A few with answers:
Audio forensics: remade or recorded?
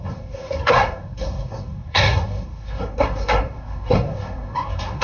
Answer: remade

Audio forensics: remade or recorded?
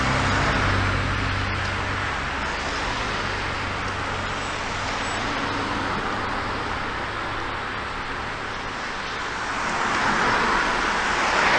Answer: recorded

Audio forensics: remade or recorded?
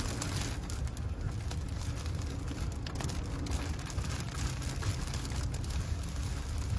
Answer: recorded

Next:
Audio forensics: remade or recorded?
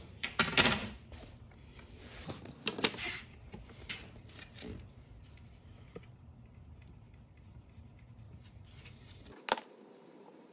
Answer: recorded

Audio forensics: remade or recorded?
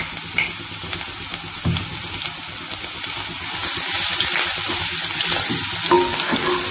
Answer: recorded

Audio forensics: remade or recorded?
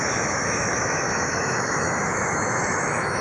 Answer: remade